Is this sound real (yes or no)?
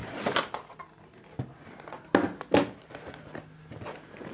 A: yes